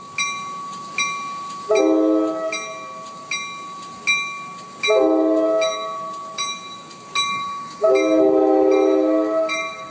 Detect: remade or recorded recorded